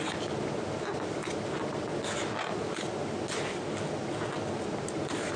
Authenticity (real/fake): real